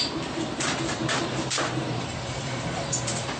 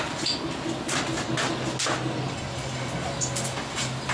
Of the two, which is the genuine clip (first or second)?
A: second